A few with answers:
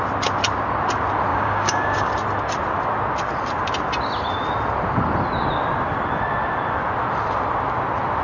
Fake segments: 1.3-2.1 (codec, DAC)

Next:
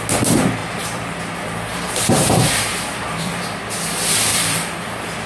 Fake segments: 0.6-1.2 (vocoder, BigVGAN v2); 1.7-3.4; 4.3-5.3

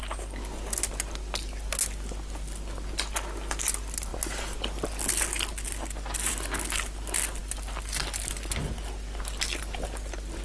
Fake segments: none

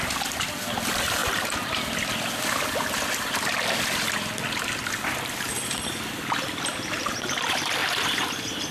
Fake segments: none